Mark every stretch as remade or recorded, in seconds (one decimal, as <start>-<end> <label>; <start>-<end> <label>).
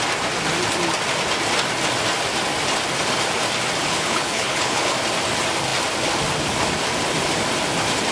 0.0-3.8 recorded; 3.8-4.9 remade; 4.9-8.1 recorded